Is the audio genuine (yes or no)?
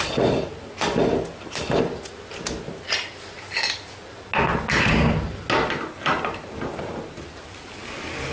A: yes